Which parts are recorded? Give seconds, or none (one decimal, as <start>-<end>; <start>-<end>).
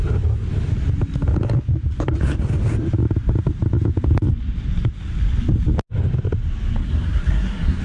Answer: 0.0-6.8